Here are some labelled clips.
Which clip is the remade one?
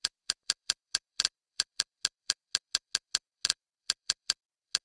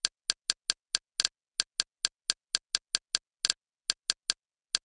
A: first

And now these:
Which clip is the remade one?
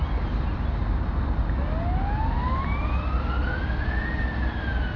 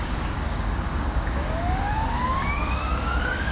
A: second